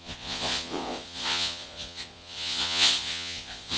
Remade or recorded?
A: remade